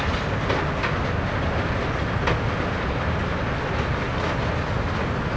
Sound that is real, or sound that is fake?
real